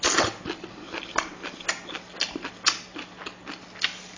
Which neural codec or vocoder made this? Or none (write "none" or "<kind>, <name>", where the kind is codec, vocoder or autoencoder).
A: none